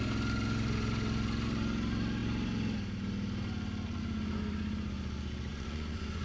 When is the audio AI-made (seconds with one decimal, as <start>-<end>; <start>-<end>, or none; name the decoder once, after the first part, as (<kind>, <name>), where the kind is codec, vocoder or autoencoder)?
5.5-6.2 (vocoder, Vocos)